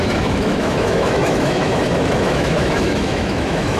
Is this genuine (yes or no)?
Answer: no